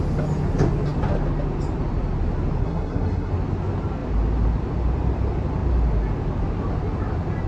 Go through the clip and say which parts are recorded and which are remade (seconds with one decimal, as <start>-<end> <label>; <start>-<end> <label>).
0.0-2.6 recorded; 2.6-3.3 remade; 3.3-7.5 recorded